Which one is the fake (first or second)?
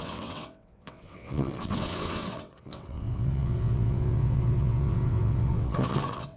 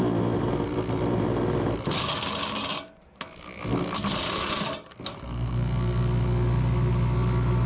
first